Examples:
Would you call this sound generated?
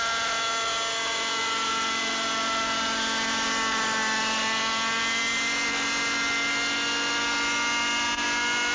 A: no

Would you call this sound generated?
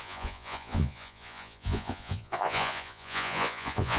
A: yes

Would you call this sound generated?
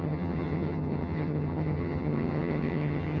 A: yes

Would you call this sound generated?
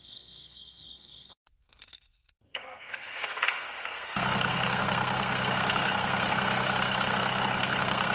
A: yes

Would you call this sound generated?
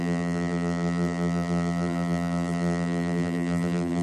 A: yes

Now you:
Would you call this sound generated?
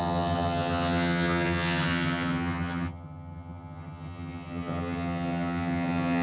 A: yes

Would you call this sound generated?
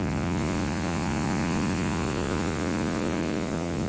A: yes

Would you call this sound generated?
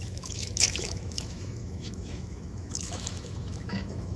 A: yes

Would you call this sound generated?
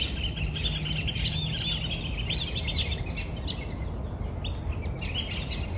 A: no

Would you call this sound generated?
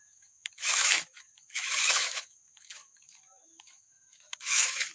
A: yes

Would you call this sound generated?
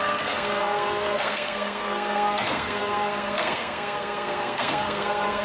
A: yes